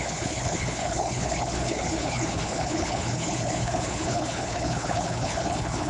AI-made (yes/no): yes